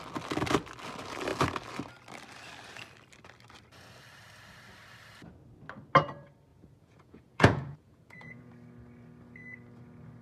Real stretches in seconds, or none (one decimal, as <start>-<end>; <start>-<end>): 0.0-6.5; 8.5-10.2